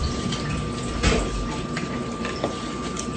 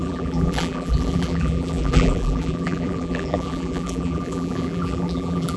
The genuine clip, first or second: first